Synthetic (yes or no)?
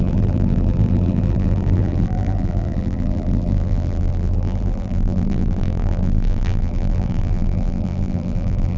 yes